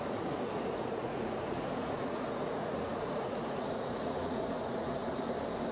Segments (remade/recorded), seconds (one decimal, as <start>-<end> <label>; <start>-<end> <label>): 0.0-5.0 remade; 5.0-5.7 recorded

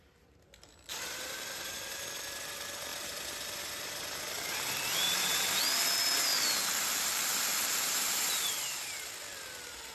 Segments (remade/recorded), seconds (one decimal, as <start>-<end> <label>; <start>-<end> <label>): 0.0-0.9 recorded; 0.9-2.0 remade; 2.0-2.9 recorded; 2.9-5.4 remade; 5.4-6.3 recorded; 6.3-9.1 remade; 9.1-9.9 recorded

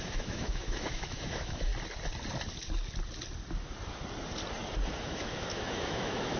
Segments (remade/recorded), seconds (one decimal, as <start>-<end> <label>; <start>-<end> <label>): 0.0-1.7 remade; 1.7-5.0 recorded; 5.0-6.4 remade

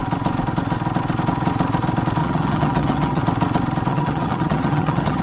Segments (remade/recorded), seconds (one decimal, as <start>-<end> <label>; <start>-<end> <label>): 0.0-2.2 recorded; 2.2-3.2 remade; 3.2-3.9 recorded; 3.9-5.2 remade

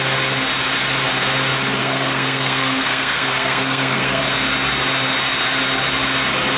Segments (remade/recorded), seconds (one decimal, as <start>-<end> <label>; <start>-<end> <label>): 0.0-1.8 recorded; 1.8-4.2 remade; 4.2-6.6 recorded